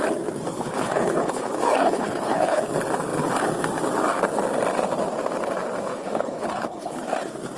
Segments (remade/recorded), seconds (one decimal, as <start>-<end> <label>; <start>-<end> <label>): 0.0-0.5 recorded; 0.5-2.6 remade; 2.6-5.9 recorded; 5.9-7.0 remade; 7.0-7.6 recorded

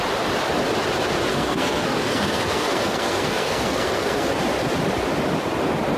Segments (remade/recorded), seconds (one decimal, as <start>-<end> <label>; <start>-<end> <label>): 0.0-1.3 recorded; 1.3-4.4 remade; 4.4-6.0 recorded

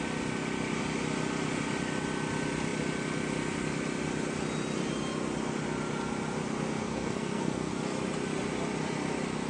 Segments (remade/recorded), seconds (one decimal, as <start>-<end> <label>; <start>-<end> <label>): 0.0-6.8 recorded; 6.8-7.7 remade; 7.7-9.5 recorded

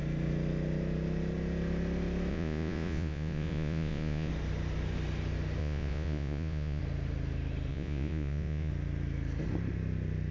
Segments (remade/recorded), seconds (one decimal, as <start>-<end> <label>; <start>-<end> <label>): 0.0-2.3 recorded; 2.3-4.3 remade; 4.3-5.6 recorded; 5.6-6.8 remade; 6.8-7.7 recorded; 7.7-8.7 remade; 8.7-10.3 recorded

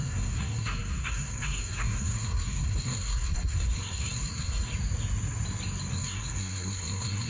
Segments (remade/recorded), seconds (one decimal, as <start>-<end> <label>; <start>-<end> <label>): 0.0-4.7 remade; 4.7-5.9 recorded; 5.9-7.3 remade

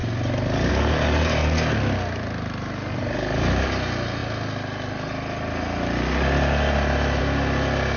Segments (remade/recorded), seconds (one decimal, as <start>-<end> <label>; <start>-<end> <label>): 0.0-8.0 recorded